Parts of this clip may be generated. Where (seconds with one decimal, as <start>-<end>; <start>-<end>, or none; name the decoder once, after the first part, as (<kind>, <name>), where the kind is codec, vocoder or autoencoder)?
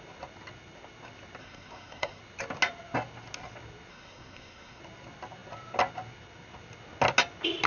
1.4-2.2 (codec, SNAC); 3.9-4.8